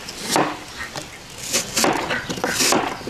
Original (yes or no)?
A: yes